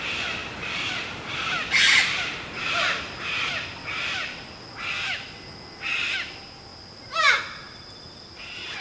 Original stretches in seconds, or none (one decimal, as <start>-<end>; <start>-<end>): 0.0-8.8